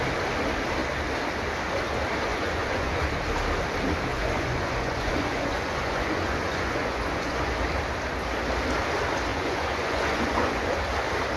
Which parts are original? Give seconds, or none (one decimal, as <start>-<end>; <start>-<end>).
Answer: 0.0-2.3; 3.1-4.1; 7.5-9.3; 10.7-11.4